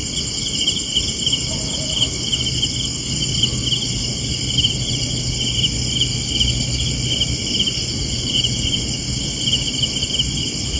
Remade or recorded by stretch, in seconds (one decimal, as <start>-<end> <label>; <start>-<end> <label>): 0.0-7.9 recorded; 7.9-8.8 remade; 8.8-10.8 recorded

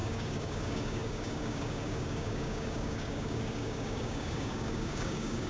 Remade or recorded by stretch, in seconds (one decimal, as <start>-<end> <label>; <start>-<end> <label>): 0.0-5.5 remade